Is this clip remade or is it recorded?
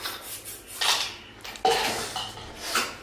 recorded